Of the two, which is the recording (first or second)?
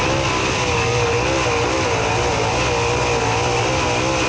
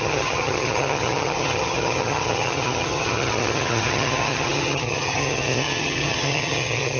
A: first